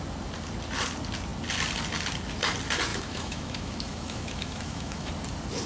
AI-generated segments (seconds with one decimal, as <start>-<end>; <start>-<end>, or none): 2.9-5.1